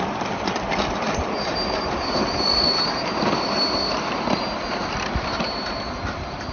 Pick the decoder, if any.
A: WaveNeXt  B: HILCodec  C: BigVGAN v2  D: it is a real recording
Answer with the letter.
D